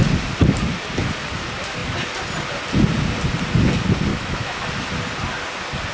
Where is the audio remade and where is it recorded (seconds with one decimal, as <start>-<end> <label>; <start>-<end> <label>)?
0.0-4.1 recorded; 4.1-4.7 remade; 4.7-5.9 recorded